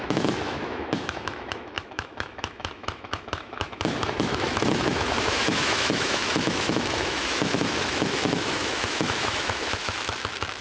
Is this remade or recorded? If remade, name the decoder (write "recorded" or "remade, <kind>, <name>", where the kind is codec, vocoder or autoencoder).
remade, autoencoder, DAC-VAE